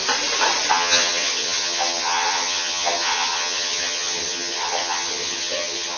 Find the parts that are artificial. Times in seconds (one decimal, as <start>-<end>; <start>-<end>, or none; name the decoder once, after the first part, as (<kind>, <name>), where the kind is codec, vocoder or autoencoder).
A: 0.7-6.0 (vocoder, HiFi-GAN)